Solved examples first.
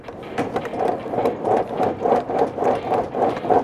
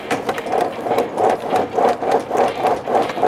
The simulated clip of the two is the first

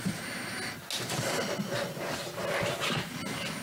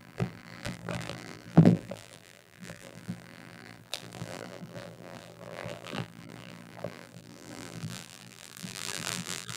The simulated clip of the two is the second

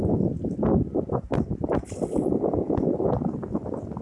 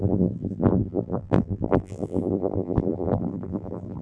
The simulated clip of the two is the second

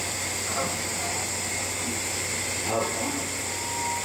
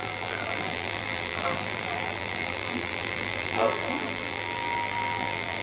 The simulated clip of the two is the second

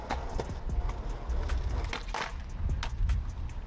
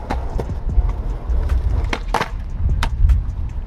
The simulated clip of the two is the second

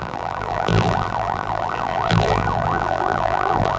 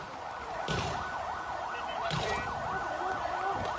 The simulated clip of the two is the first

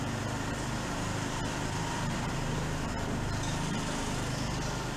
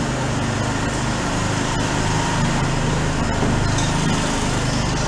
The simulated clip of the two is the first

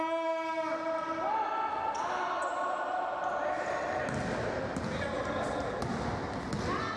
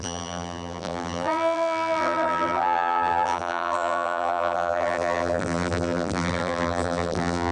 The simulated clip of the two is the second